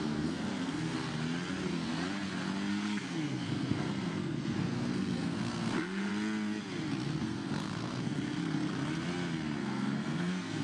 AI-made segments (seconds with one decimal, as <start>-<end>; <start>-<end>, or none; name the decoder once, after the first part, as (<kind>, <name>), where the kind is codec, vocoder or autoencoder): 0.0-0.9 (codec, SNAC); 2.7-6.1; 7.2-8.7; 9.6-10.6